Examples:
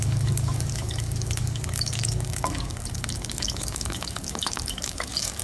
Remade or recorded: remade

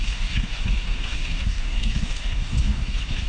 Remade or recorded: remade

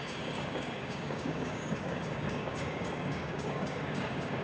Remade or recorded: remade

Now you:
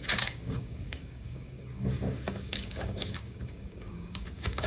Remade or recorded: remade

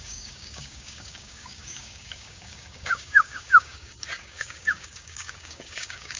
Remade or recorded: remade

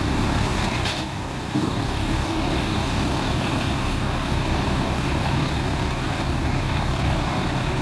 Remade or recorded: remade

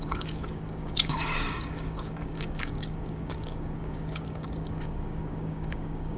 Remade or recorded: remade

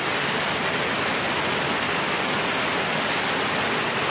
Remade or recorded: recorded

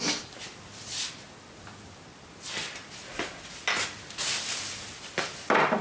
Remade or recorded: recorded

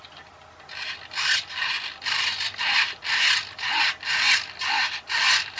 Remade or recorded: recorded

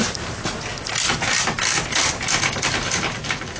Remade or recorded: recorded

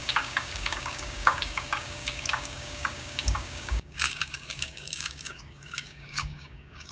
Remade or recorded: remade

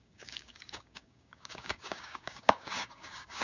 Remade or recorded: remade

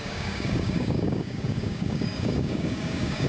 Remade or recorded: remade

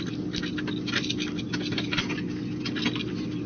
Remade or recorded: recorded